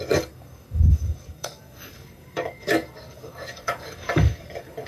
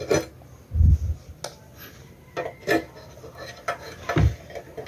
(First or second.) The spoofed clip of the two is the first